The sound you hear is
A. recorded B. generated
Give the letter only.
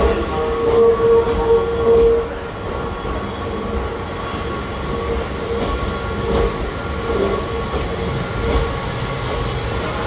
A